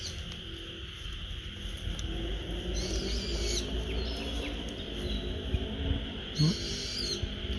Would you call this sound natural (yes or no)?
yes